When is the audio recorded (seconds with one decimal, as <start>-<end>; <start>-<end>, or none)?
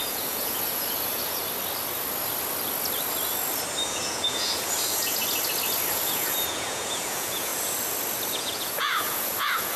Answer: 1.4-3.9; 5.2-5.9; 7.5-8.3